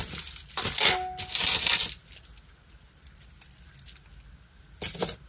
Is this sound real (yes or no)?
yes